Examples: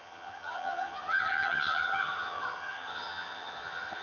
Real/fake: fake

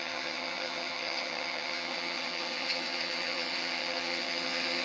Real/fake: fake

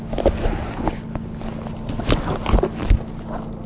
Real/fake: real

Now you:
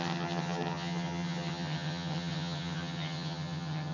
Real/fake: fake